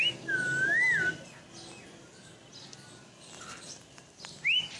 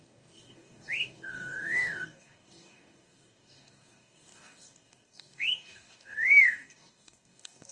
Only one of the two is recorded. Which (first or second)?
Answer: first